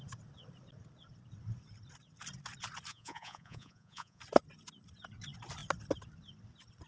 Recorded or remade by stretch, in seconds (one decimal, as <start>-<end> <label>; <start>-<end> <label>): 0.0-2.9 recorded; 2.9-4.2 remade; 4.2-6.9 recorded